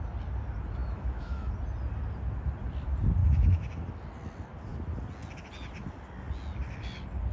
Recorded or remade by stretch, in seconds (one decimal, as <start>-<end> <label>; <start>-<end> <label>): 0.0-0.8 recorded; 0.8-1.5 remade; 1.5-3.2 recorded; 3.2-3.7 remade; 3.7-7.3 recorded